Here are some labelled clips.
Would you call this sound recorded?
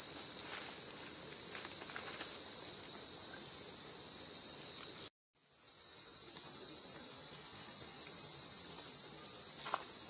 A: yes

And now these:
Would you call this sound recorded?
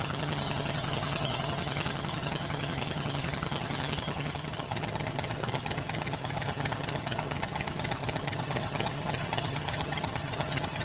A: no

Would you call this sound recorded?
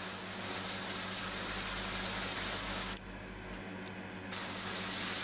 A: yes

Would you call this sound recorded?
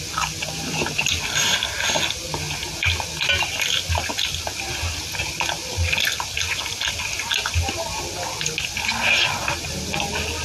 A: yes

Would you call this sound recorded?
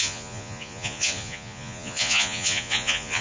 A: no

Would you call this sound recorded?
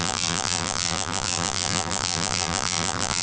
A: no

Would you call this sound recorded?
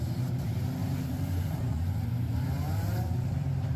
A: no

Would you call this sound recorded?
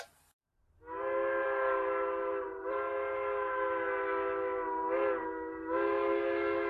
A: yes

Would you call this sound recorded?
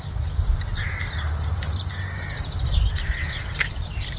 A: yes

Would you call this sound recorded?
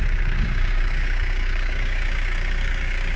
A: no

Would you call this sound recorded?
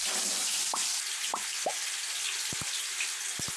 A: yes